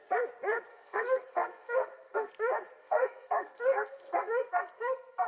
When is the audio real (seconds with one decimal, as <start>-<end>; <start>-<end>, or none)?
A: 0.0-0.7; 2.3-2.8